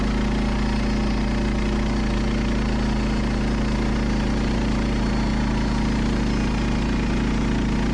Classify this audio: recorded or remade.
recorded